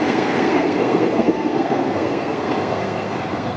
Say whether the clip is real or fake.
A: fake